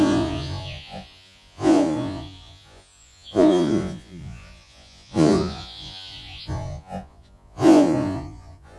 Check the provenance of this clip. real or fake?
fake